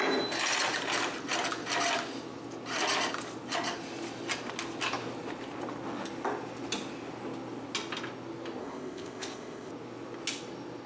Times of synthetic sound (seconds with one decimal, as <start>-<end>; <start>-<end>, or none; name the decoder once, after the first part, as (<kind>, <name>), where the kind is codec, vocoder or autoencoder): 8.6-9.7 (codec, ZipCodec)